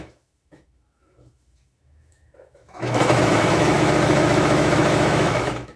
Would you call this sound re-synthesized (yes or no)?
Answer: yes